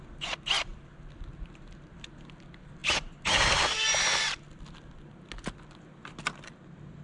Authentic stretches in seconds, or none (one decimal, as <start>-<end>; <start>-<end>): 0.0-7.0